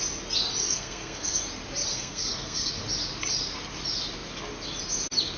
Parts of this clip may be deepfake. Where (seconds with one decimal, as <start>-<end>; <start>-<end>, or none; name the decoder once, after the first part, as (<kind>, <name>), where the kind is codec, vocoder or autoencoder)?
0.6-1.4 (codec, SNAC); 1.9-2.7